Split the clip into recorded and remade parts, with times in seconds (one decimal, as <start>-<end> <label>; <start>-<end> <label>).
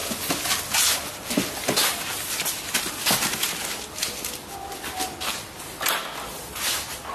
0.0-7.1 recorded